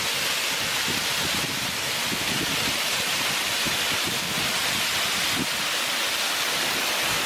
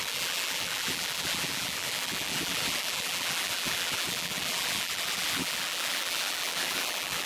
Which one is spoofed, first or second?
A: second